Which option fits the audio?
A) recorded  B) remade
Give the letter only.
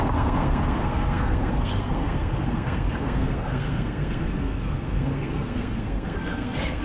B